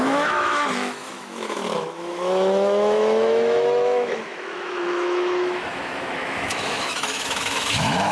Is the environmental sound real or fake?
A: fake